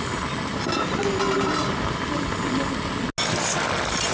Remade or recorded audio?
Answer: recorded